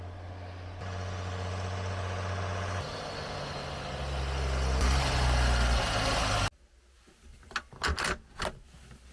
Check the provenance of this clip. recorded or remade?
recorded